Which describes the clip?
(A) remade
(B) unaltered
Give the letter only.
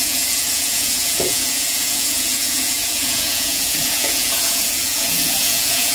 A